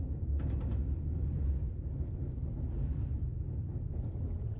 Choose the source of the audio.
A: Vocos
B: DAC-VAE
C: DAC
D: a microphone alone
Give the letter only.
D